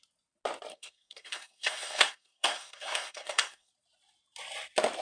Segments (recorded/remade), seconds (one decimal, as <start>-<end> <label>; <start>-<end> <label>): 0.0-0.7 recorded; 0.7-3.7 remade; 3.7-5.0 recorded